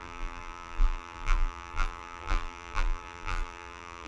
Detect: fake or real fake